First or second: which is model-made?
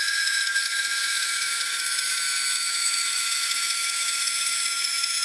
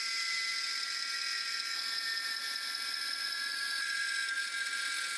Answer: first